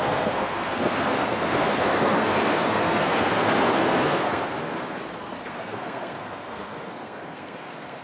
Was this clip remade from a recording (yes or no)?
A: yes